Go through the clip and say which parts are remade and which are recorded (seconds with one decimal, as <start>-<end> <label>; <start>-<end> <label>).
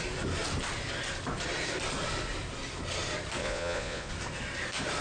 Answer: 0.0-3.4 recorded; 3.4-4.1 remade; 4.1-5.0 recorded